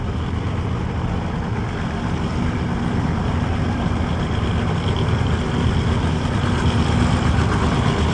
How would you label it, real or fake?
real